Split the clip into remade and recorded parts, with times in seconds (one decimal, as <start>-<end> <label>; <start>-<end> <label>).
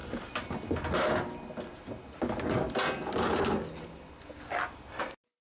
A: 0.0-5.4 recorded